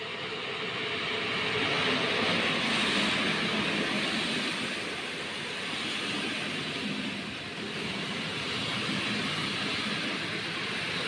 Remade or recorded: recorded